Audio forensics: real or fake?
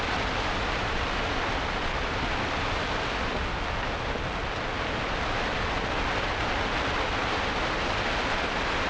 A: real